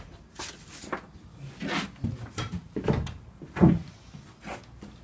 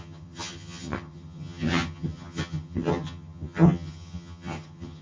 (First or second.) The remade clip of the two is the second